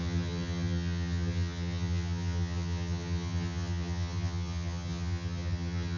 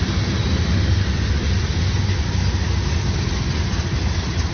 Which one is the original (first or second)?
second